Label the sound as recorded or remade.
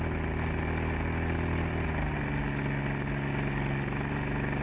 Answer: recorded